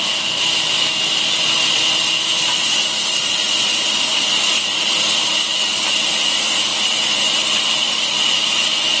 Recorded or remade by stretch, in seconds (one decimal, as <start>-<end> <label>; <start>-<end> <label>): 0.0-9.0 recorded